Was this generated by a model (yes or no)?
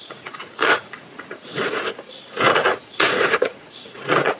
yes